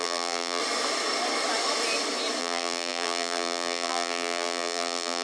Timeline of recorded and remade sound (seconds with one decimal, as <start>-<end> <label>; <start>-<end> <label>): 0.0-0.6 remade; 0.6-2.4 recorded; 2.4-5.2 remade